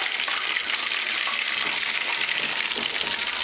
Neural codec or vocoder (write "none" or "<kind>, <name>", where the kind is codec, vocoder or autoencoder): none